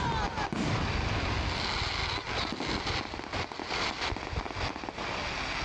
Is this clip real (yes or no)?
yes